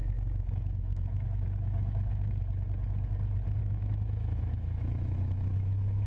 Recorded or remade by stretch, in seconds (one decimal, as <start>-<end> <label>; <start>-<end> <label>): 0.0-2.4 remade; 2.4-3.6 recorded; 3.6-6.1 remade